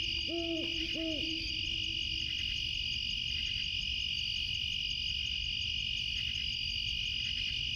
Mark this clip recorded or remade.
recorded